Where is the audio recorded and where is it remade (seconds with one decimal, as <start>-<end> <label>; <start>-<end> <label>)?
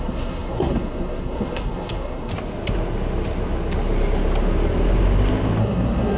0.0-2.3 remade; 2.3-5.6 recorded; 5.6-6.2 remade